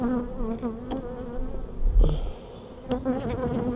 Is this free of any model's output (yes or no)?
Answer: yes